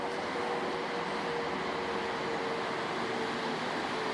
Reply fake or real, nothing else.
real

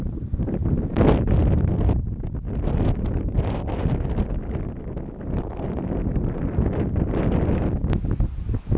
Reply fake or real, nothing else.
real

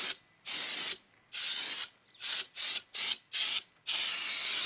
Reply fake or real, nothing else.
real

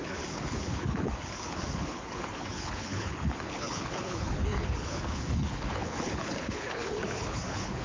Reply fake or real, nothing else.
fake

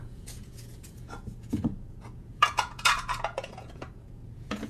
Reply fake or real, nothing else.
fake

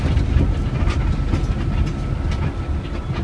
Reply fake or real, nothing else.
real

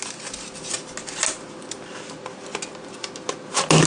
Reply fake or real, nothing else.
real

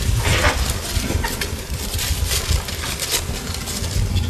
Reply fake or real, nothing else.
real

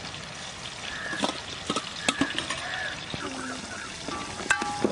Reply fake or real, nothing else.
real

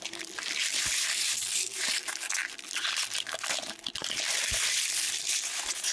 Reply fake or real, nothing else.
fake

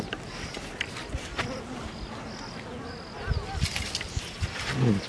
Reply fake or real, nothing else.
real